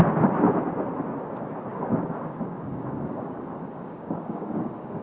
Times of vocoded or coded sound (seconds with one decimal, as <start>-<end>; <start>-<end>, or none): 1.7-5.0